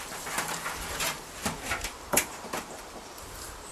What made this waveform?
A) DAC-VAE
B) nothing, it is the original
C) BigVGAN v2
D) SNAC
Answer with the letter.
C